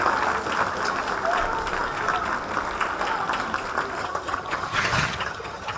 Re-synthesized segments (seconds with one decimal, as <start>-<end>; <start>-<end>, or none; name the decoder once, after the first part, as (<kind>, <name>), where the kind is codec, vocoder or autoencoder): 4.0-5.8 (vocoder, HiFi-GAN)

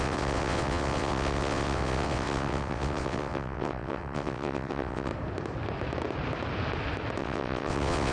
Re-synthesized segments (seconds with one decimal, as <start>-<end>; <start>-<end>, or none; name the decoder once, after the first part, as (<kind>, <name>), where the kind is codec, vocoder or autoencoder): 0.0-5.1 (vocoder, WaveNeXt); 7.2-8.1